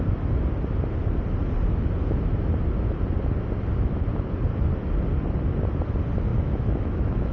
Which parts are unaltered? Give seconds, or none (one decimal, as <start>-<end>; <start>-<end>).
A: 0.0-6.3